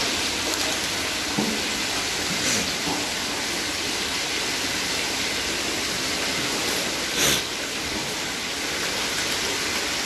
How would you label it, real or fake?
real